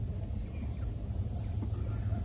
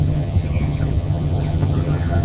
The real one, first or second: first